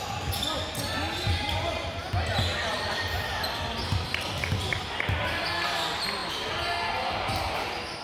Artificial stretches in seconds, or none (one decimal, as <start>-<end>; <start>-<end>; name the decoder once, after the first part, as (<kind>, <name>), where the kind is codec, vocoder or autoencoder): 2.7-4.9 (vocoder, BigVGAN v2)